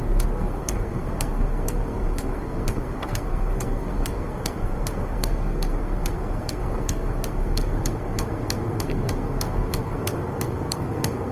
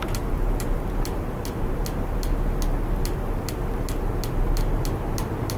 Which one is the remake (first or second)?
first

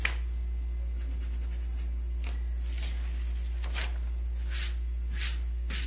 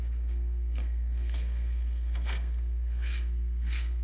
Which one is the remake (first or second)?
second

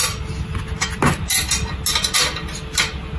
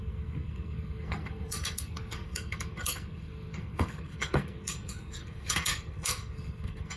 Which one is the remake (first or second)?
second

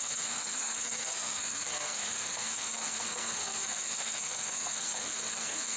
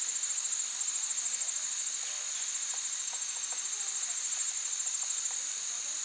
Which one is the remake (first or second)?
first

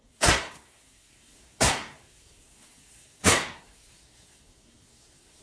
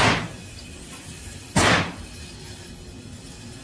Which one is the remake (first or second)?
first